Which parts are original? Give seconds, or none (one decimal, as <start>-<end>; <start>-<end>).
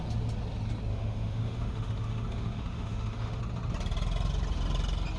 0.0-0.9; 3.4-5.2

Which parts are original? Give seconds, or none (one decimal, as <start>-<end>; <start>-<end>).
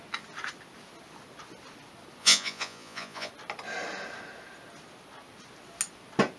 0.0-2.2; 3.3-6.4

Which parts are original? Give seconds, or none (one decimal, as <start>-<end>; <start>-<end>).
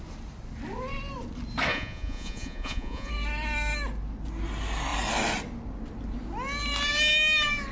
0.0-1.7; 3.1-7.7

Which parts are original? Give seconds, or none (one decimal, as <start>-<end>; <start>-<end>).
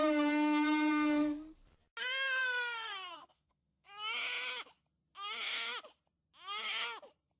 0.0-2.4; 3.9-7.4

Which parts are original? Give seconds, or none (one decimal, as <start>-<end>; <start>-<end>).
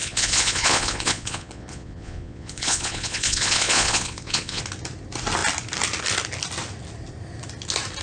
4.6-8.0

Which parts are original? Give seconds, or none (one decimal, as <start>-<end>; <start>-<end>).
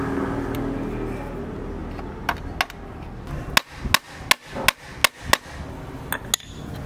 0.0-6.9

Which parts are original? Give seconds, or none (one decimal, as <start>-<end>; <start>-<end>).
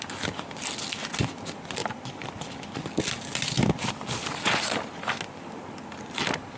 0.0-6.6